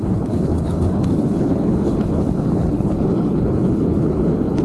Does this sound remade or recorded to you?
remade